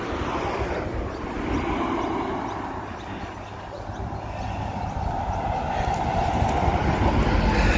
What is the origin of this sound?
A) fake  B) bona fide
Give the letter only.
B